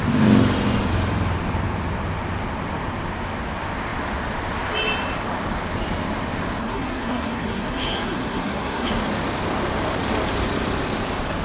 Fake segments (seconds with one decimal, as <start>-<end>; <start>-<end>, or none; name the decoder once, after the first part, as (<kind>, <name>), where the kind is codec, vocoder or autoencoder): 6.6-9.0 (codec, SNAC)